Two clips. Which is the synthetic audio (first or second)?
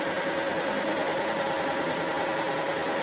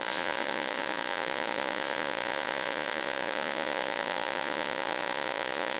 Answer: second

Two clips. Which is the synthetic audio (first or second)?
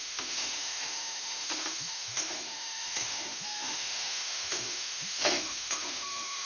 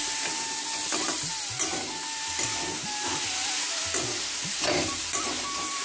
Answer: first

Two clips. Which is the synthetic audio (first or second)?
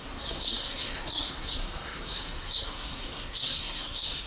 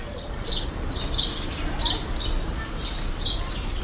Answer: first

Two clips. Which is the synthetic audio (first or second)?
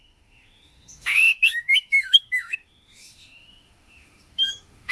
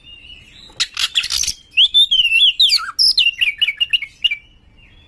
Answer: first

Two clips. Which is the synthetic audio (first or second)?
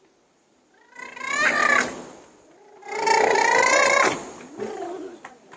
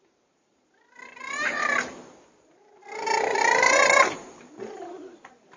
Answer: second